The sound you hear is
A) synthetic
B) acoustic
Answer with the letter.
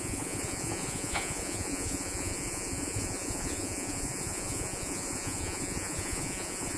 A